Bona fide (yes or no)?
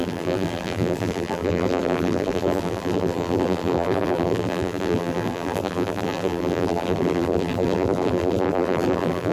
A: no